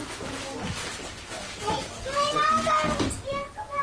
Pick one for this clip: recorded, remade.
recorded